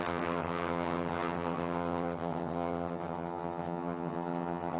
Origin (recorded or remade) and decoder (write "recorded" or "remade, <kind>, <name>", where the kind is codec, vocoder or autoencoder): remade, vocoder, HiFi-GAN